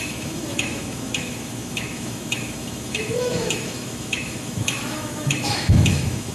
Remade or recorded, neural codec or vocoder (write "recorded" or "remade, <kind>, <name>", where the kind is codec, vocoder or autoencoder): remade, autoencoder, DAC-VAE